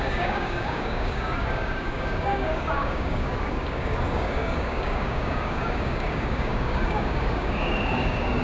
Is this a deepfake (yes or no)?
yes